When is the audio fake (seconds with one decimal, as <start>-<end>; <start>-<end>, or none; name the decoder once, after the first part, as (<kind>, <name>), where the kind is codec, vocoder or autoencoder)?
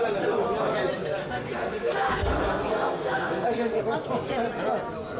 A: 1.2-3.8 (codec, SNAC)